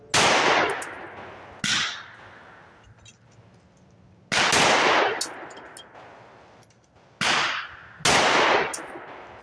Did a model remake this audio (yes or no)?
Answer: no